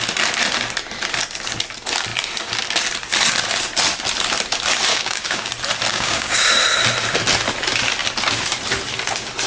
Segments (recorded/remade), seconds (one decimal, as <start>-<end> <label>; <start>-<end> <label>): 0.0-4.9 recorded; 4.9-5.5 remade; 5.5-5.9 recorded; 5.9-6.6 remade; 6.6-9.5 recorded